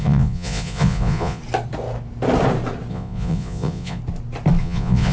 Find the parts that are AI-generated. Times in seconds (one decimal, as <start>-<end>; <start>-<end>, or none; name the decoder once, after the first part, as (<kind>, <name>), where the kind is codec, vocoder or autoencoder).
0.0-1.4 (vocoder, Vocos); 2.9-4.0; 4.6-5.1